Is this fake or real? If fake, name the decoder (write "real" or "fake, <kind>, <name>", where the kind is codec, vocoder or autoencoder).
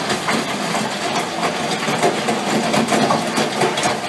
real